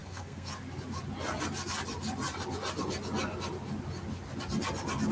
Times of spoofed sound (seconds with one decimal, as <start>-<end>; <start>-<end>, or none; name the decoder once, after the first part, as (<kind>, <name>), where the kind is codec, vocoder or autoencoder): 0.0-0.5 (codec, SNAC)